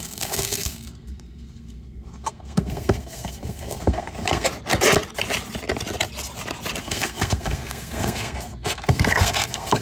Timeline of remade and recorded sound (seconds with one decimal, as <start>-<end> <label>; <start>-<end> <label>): 0.0-4.5 remade; 4.5-6.8 recorded; 6.8-9.8 remade